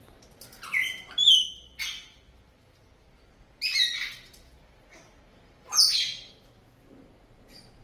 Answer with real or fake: real